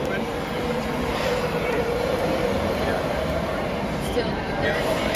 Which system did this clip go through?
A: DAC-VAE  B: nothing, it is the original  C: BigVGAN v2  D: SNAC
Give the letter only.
C